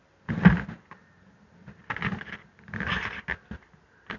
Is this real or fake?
real